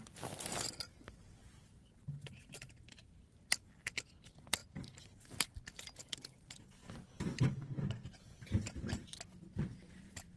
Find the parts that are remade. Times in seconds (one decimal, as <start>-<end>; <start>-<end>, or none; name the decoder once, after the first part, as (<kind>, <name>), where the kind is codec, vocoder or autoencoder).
1.4-3.5 (vocoder, BigVGAN v2); 4.6-5.2; 6.8-10.4